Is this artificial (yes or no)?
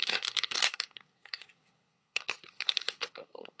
yes